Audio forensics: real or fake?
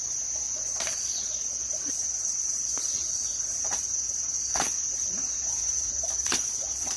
fake